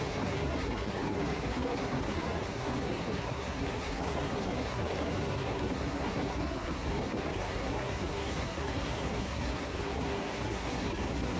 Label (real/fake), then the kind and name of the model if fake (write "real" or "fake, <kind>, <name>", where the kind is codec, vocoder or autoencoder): fake, codec, SNAC